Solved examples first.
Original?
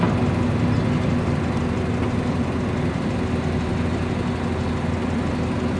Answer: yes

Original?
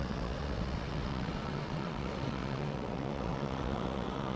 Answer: no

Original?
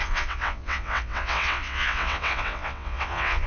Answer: no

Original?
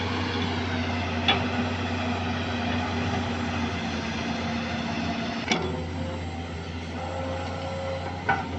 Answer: yes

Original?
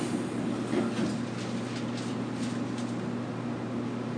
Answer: yes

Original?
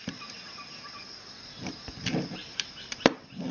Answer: yes